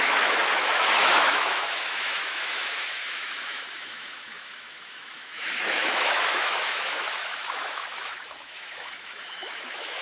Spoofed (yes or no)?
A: yes